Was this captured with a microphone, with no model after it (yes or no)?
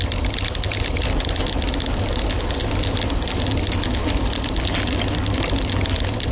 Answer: yes